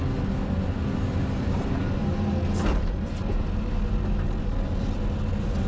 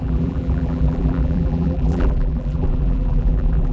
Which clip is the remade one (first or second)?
second